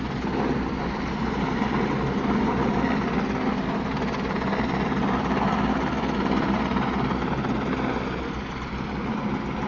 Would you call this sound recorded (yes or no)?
yes